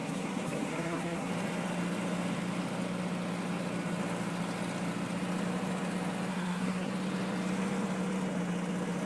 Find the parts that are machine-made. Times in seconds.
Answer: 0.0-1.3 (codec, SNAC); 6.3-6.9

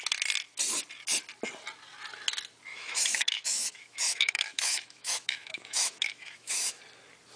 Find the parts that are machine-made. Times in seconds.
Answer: 2.7-6.8 (autoencoder, DAC-VAE)

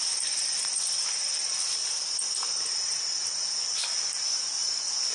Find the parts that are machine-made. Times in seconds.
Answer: 0.0-1.8 (vocoder, BigVGAN v2); 3.7-4.6

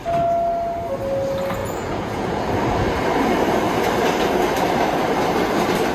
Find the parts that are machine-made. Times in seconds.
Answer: 1.6-2.4 (vocoder, Vocos)

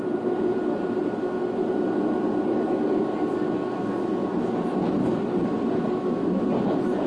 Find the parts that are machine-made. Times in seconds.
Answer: none

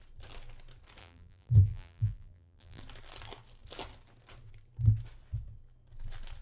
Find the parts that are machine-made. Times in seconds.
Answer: 1.0-2.8 (vocoder, BigVGAN v2)

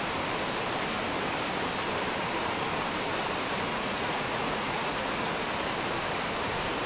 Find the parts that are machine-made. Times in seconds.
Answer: 3.7-5.3 (vocoder, Vocos)

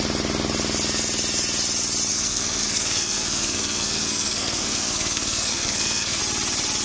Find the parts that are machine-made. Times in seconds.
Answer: 2.1-6.2 (codec, SNAC)